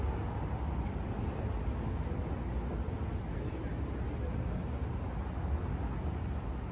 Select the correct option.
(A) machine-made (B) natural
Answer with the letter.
B